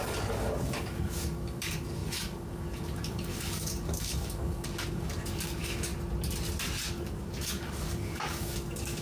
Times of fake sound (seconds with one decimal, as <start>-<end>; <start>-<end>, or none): 0.0-5.9; 6.9-9.0